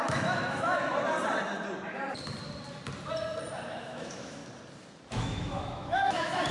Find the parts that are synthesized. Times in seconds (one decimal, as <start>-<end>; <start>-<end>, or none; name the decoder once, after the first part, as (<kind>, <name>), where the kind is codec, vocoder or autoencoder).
0.0-0.8 (autoencoder, DAC-VAE); 3.7-4.4; 5.1-6.5

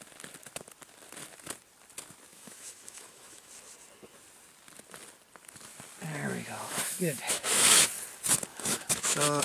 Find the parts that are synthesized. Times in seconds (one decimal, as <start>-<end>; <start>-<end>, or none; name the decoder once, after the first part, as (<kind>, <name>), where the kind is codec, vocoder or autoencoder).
2.3-3.5 (autoencoder, DAC-VAE); 6.3-7.9; 8.5-9.4